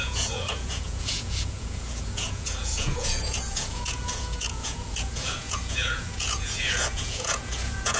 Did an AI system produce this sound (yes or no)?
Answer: yes